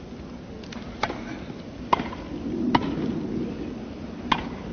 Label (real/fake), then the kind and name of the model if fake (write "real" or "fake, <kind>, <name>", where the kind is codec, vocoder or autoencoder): real